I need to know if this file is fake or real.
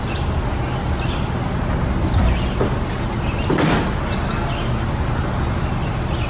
real